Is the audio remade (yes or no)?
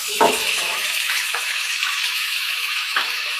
yes